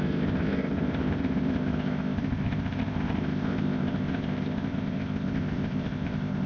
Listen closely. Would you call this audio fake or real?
fake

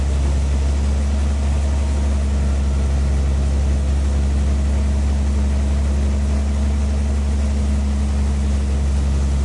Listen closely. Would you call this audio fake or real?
real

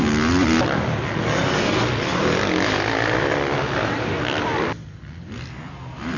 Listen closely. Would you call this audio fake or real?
real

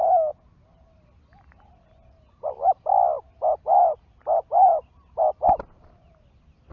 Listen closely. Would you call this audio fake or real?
real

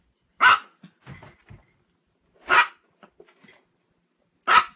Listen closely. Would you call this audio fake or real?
real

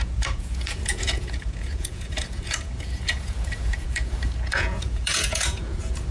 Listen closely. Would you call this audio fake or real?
fake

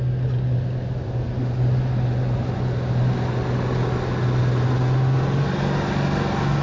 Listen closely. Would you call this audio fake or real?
real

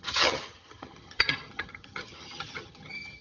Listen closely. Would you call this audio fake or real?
fake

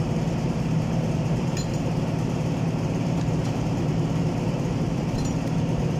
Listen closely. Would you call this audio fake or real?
fake